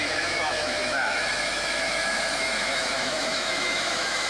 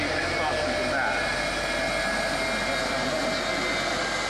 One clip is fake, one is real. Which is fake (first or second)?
first